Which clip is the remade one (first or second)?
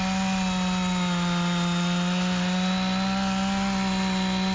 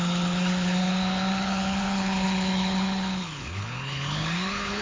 second